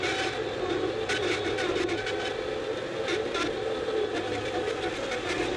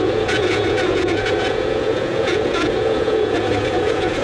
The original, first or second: first